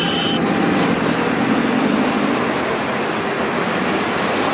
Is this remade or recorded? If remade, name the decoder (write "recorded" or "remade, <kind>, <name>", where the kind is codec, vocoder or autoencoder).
recorded